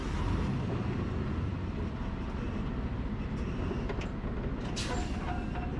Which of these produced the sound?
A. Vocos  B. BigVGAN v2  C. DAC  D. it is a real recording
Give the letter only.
D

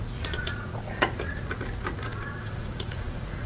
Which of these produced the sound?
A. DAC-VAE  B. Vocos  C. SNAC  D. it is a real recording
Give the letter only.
B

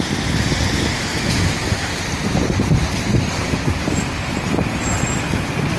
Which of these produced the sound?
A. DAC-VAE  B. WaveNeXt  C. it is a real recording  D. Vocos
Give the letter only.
C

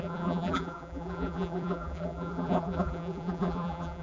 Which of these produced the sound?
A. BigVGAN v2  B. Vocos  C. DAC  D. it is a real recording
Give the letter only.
A